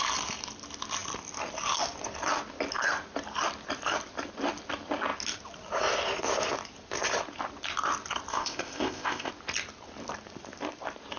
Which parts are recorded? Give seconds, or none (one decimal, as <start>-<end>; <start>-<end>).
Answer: 0.0-8.3; 9.3-11.2